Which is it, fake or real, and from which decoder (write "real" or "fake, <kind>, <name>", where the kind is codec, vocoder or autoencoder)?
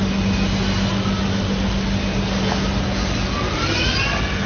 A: real